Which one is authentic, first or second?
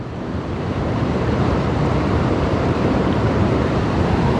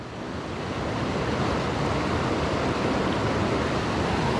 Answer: second